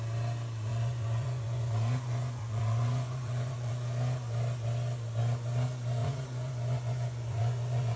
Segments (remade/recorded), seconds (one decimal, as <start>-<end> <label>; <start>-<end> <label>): 0.0-0.7 recorded; 0.7-3.7 remade; 3.7-6.0 recorded; 6.0-8.0 remade